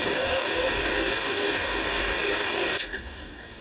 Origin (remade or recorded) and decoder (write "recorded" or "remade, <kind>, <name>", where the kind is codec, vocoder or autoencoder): remade, codec, DAC